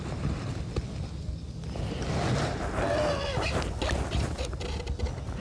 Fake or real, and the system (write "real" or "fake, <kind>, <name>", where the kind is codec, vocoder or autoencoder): real